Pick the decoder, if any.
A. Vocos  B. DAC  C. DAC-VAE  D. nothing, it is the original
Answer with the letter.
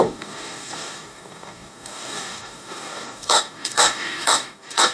B